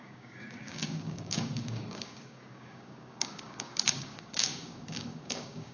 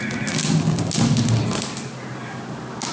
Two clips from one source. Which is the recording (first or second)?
second